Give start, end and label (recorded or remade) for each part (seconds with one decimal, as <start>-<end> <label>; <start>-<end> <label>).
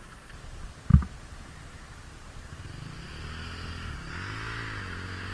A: 0.0-5.3 recorded